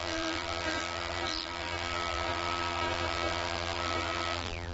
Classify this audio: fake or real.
fake